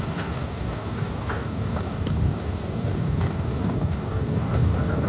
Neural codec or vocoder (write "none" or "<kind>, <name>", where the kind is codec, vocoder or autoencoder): codec, DAC